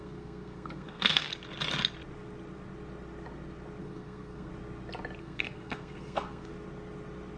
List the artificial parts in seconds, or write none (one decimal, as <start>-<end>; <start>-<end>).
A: 0.0-1.3; 3.8-4.5; 5.2-6.5